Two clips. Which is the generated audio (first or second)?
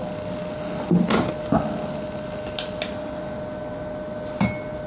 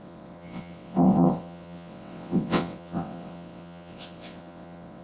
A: second